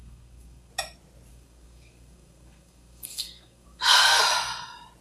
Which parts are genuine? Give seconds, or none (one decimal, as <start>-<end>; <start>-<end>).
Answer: 0.7-1.3; 4.2-5.0